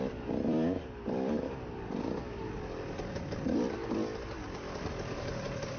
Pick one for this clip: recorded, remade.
remade